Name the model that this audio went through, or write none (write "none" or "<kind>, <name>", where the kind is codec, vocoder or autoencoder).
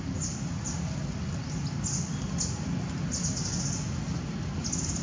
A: none